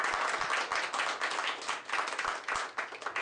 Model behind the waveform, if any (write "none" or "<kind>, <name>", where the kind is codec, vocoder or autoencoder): none